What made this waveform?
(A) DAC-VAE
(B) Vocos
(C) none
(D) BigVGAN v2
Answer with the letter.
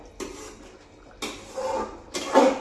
C